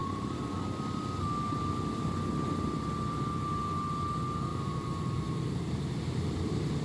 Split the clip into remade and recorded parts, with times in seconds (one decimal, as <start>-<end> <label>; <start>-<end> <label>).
0.0-4.5 recorded; 4.5-5.9 remade; 5.9-6.8 recorded